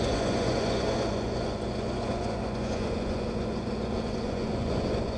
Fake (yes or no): yes